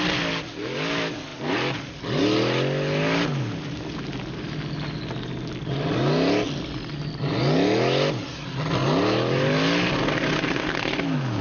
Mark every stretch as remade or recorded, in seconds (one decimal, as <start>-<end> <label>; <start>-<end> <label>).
0.0-11.4 recorded